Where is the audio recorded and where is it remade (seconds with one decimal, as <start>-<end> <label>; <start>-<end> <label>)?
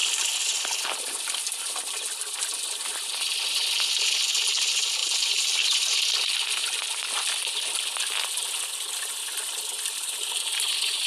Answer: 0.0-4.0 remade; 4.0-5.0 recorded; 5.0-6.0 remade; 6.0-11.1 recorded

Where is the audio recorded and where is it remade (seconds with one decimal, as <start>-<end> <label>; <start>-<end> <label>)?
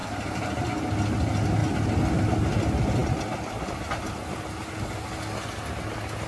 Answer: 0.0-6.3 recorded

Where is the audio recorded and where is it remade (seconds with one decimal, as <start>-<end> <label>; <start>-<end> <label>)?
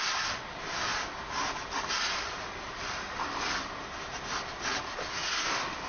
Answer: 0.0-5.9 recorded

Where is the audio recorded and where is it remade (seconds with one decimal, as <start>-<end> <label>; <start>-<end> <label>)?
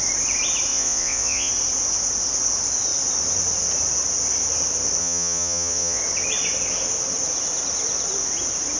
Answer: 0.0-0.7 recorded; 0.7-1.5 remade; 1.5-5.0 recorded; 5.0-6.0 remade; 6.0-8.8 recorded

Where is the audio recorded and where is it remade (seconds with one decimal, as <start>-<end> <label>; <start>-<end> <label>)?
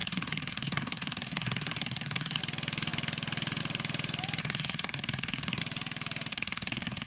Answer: 0.0-2.4 remade; 2.4-4.4 recorded; 4.4-5.6 remade; 5.6-6.3 recorded; 6.3-7.1 remade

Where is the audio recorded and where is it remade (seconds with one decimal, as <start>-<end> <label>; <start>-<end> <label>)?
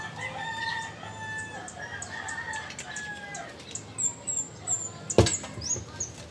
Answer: 0.0-4.1 recorded; 4.1-5.0 remade; 5.0-6.3 recorded